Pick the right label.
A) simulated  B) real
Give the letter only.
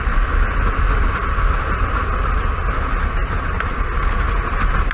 B